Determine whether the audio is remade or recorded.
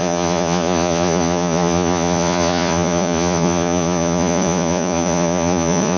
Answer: remade